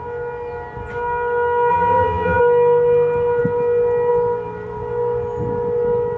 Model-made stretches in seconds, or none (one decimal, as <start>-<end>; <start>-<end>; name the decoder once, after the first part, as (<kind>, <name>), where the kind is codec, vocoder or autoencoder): 1.7-2.4 (vocoder, BigVGAN v2)